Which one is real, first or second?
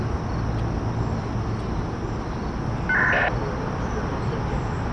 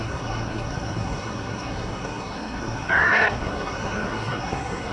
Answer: first